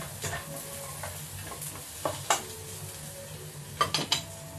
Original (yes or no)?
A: yes